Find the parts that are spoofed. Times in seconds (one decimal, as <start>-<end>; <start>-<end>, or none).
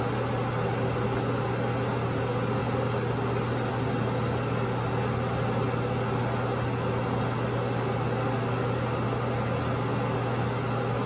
none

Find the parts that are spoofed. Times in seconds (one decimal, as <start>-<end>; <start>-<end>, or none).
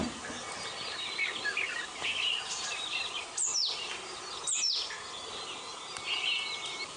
none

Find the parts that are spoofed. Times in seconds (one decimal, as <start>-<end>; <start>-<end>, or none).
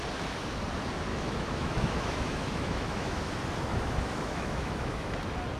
1.1-3.3; 3.7-5.1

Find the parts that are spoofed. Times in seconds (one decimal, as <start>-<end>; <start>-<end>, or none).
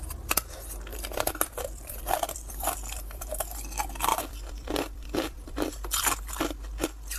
0.9-3.3; 4.1-6.3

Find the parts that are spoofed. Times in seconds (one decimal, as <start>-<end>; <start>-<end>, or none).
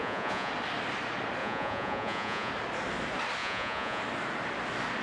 0.0-0.5; 1.4-2.5; 3.4-4.0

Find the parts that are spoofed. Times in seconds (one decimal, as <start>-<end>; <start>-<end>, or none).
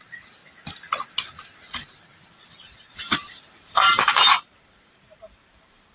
0.0-0.4; 1.4-5.9